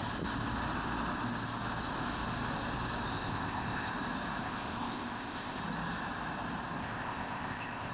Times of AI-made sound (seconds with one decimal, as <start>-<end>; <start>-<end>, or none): 3.1-3.9; 4.4-5.6; 6.8-7.9